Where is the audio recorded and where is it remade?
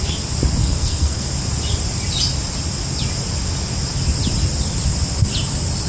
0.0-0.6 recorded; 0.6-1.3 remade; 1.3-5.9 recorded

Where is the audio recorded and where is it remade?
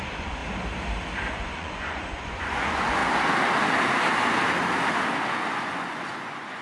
0.0-0.4 remade; 0.4-1.3 recorded; 1.3-3.0 remade; 3.0-5.3 recorded; 5.3-6.6 remade